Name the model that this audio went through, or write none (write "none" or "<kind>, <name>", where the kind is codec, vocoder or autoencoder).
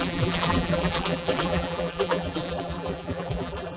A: vocoder, BigVGAN v2